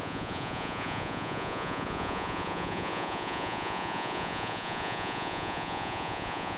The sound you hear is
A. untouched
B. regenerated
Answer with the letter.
B